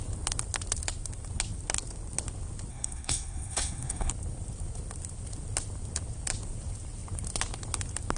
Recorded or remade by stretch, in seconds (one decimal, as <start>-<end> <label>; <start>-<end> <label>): 0.0-2.7 recorded; 2.7-4.1 remade; 4.1-8.2 recorded